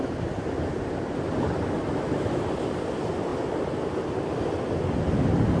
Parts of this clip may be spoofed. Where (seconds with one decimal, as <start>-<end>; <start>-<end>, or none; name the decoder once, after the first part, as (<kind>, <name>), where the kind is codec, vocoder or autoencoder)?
none